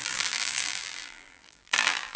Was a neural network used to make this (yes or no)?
yes